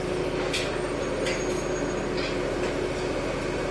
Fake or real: real